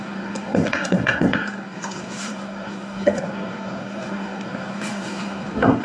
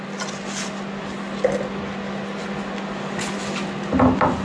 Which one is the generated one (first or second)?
first